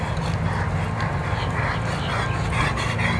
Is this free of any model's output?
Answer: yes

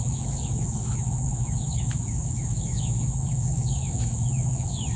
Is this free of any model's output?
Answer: no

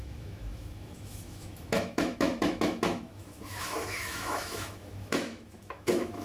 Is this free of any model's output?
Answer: no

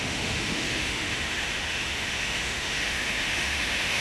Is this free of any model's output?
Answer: no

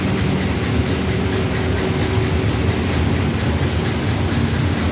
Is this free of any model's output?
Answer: yes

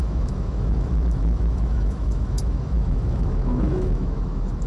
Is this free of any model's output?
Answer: no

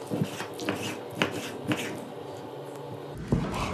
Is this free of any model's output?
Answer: yes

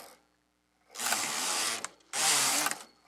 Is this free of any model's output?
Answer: yes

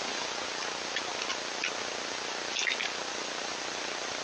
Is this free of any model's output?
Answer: yes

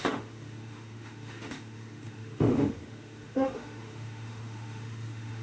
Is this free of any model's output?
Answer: no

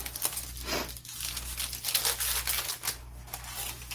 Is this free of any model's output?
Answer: yes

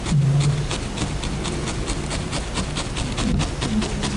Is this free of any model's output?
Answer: yes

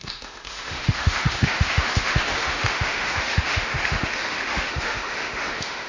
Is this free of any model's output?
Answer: no